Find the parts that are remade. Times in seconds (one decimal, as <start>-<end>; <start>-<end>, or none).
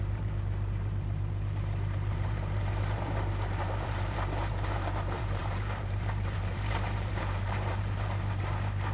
0.0-8.9